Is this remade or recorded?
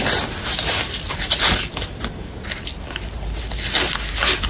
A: recorded